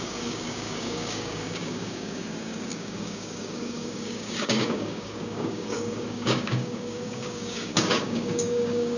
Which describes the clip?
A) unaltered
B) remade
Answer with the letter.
B